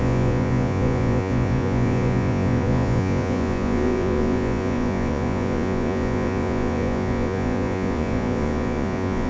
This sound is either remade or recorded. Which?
remade